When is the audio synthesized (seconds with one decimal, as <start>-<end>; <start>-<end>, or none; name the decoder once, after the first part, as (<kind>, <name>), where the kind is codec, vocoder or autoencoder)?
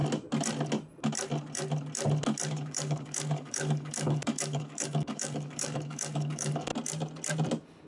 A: 2.5-6.7 (codec, DAC)